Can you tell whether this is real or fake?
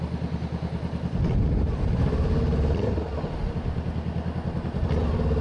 real